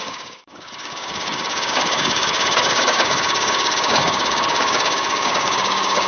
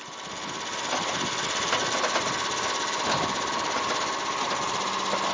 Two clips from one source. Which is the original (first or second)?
second